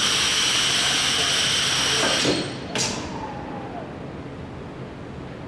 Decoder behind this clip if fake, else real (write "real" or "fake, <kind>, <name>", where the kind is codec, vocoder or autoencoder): real